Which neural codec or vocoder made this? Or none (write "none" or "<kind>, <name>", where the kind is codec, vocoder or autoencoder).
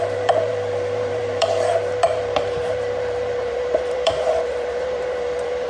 vocoder, BigVGAN v2